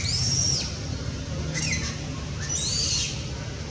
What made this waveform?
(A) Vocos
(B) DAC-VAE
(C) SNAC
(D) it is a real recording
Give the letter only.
D